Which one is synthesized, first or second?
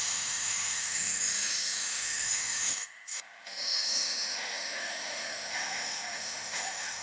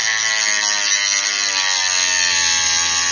first